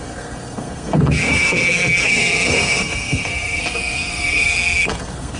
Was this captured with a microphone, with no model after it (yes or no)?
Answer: no